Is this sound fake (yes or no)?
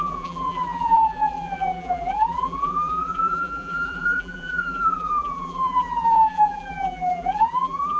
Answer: yes